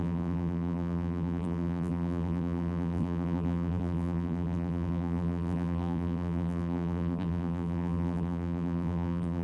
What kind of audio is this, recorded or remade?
remade